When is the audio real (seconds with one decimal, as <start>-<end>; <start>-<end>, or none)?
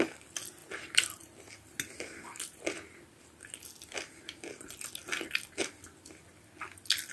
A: 0.0-7.1